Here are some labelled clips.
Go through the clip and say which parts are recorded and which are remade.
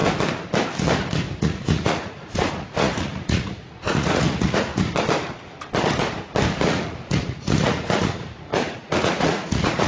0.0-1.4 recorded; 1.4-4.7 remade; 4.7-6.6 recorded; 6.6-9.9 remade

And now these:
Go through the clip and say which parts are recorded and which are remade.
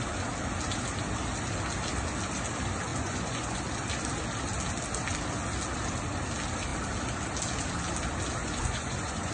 0.0-2.9 recorded; 2.9-3.6 remade; 3.6-8.4 recorded; 8.4-9.3 remade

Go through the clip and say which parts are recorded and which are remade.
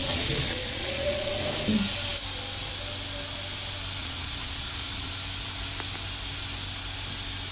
0.0-1.3 remade; 1.3-4.0 recorded; 4.0-5.1 remade; 5.1-7.5 recorded